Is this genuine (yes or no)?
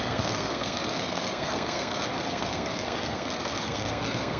no